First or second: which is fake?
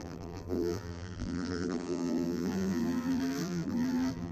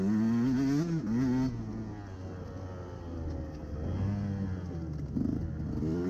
first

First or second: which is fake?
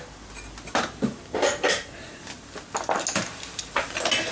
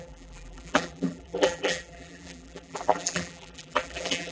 second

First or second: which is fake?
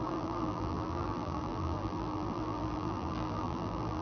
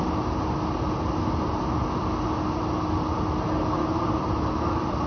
first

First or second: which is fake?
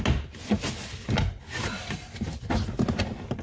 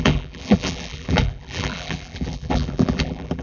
second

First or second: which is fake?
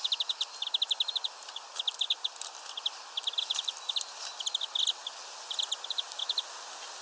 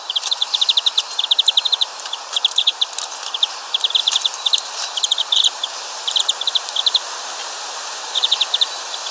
second